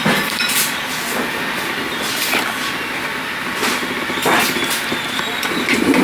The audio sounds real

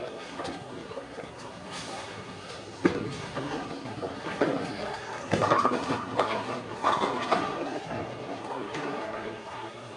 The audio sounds fake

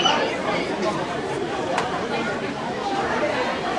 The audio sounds fake